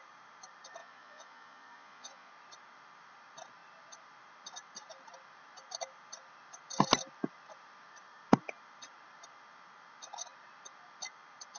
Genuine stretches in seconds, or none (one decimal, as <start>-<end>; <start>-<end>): 0.0-0.8; 2.3-11.6